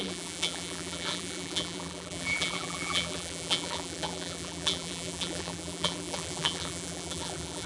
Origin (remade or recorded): remade